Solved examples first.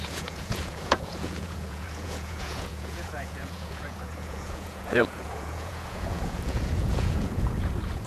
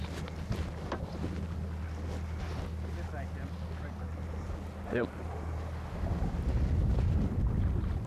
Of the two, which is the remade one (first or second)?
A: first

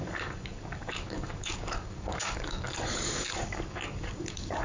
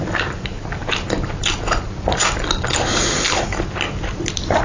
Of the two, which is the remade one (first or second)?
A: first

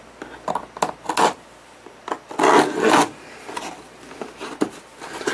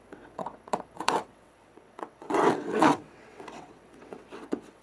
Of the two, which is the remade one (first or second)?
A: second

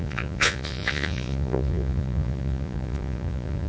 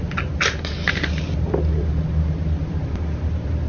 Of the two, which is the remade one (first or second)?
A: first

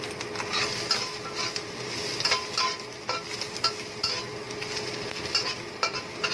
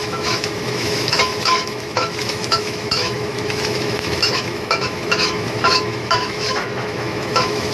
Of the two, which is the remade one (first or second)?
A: second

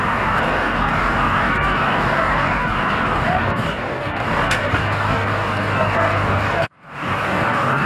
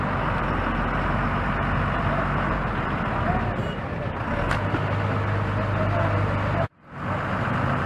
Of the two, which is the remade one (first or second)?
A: first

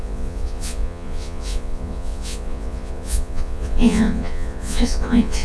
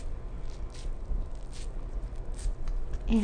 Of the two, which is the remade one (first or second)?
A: first